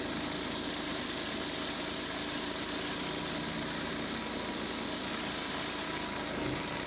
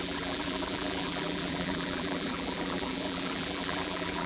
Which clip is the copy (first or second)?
second